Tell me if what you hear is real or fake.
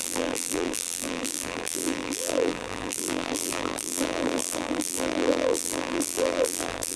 fake